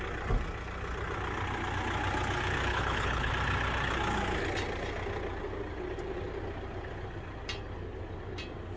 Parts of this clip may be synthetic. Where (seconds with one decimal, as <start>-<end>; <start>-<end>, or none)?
2.7-3.3